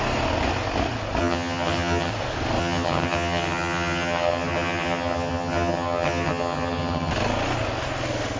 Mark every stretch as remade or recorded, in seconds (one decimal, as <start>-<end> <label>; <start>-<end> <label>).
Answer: 0.0-1.2 recorded; 1.2-2.1 remade; 2.1-2.6 recorded; 2.6-7.1 remade; 7.1-8.4 recorded

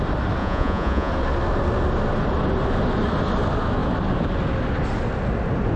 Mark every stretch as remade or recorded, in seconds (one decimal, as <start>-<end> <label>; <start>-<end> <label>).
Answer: 0.0-0.4 recorded; 0.4-1.1 remade; 1.1-5.8 recorded

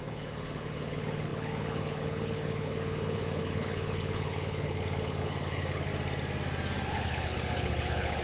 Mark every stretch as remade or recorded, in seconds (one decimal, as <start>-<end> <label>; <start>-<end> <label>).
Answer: 0.0-5.9 remade; 5.9-6.9 recorded; 6.9-8.2 remade

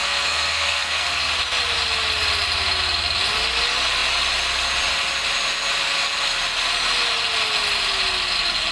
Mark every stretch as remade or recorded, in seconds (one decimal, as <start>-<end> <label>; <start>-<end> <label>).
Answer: 0.0-1.3 remade; 1.3-8.7 recorded